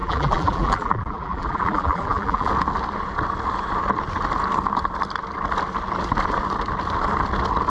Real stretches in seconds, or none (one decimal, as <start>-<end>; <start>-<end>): 2.5-7.7